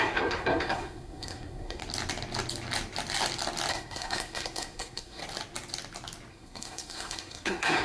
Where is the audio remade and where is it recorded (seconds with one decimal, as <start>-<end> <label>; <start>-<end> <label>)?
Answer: 0.0-1.8 remade; 1.8-3.7 recorded; 3.7-5.2 remade; 5.2-6.3 recorded; 6.3-7.8 remade